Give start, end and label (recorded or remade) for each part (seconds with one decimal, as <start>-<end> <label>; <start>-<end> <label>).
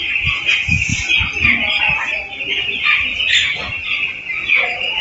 0.0-5.0 recorded